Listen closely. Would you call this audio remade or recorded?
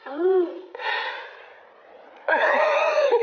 remade